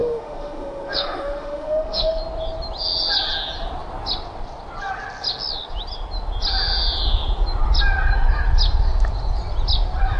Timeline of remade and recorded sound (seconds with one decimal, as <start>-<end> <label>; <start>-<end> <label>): 0.0-2.2 remade; 2.2-10.2 recorded